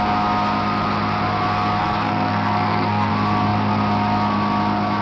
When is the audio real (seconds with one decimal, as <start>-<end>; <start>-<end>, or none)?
0.0-1.8; 3.1-5.0

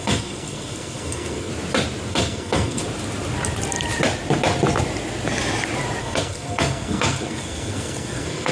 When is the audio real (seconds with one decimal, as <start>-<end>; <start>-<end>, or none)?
1.5-2.1; 2.8-6.0

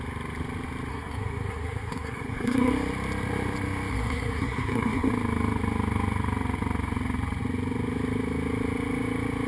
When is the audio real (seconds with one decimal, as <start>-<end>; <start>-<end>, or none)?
0.0-0.9; 2.7-3.9; 5.1-9.5

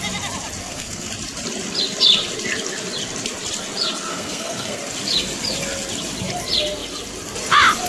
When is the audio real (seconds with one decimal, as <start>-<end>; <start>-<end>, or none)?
0.0-0.6; 1.1-4.1; 4.8-7.9

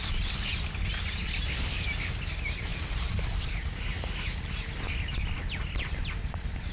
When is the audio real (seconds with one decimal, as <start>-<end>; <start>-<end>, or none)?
0.0-6.7

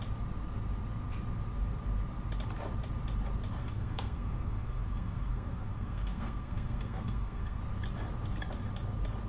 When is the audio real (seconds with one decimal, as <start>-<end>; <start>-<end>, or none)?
0.0-3.6; 7.6-9.3

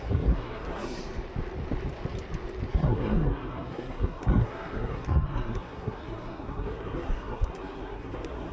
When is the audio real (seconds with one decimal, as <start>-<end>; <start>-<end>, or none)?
1.0-2.7

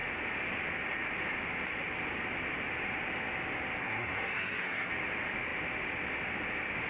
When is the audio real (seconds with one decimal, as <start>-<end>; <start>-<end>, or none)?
0.0-3.8; 4.9-6.9